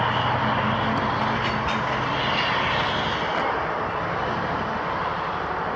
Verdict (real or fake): real